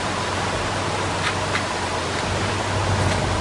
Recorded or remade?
recorded